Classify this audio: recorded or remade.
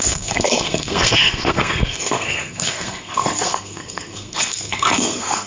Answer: remade